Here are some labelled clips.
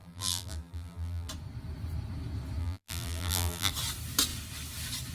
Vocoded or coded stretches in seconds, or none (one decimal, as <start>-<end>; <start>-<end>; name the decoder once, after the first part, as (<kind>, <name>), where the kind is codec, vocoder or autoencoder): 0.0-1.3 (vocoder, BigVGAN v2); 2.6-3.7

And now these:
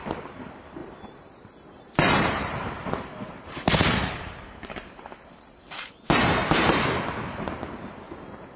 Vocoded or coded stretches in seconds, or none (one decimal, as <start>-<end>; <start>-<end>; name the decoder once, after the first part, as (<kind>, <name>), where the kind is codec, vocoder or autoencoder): 0.8-5.9 (vocoder, BigVGAN v2); 6.4-7.6

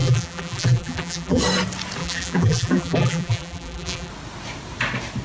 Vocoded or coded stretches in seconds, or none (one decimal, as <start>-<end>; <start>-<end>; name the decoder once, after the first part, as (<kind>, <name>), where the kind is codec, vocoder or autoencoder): 0.0-1.4 (vocoder, BigVGAN v2); 2.0-4.1

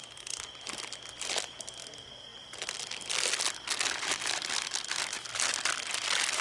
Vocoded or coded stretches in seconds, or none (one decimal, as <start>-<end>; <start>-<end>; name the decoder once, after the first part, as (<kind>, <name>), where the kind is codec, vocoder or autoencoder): none